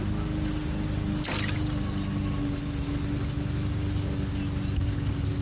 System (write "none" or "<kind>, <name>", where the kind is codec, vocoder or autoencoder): none